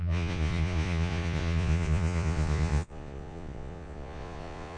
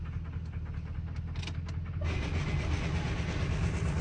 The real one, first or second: second